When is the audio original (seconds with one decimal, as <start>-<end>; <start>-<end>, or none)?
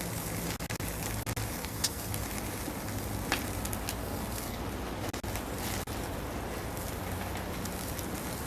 0.0-1.6; 2.1-4.0; 4.6-8.5